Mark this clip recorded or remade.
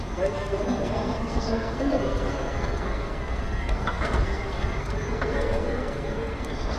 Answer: remade